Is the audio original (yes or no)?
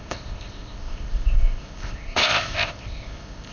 no